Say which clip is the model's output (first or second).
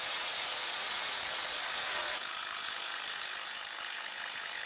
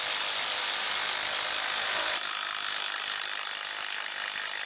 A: first